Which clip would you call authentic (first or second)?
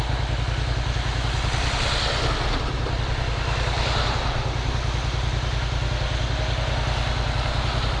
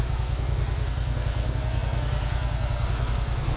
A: first